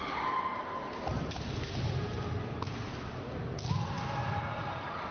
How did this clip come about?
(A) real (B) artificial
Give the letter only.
A